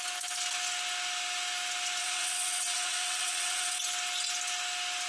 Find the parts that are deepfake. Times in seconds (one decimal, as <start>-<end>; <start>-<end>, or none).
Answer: 2.0-3.8